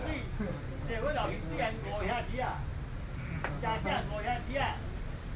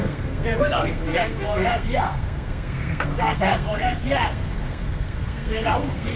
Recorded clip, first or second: first